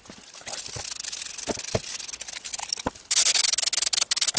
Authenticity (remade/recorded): recorded